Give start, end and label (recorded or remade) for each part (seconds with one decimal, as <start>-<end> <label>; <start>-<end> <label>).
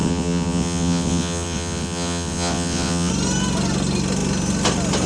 0.0-3.1 remade; 3.1-5.1 recorded